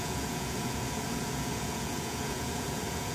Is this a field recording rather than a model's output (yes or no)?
no